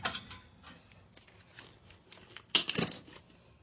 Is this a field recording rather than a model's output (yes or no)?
yes